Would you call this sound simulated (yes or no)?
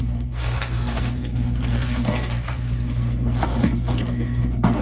yes